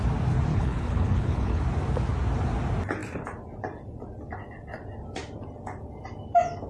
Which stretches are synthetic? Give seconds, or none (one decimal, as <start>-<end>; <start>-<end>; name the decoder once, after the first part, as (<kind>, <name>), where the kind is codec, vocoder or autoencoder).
0.5-1.6 (codec, HILCodec)